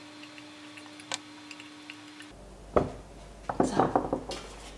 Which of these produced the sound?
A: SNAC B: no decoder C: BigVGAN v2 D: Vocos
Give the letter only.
B